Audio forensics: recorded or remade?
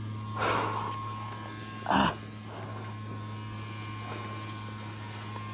recorded